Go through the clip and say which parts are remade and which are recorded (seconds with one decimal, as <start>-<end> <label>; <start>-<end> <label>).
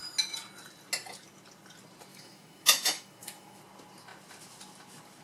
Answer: 0.0-2.1 recorded; 2.1-3.6 remade; 3.6-5.2 recorded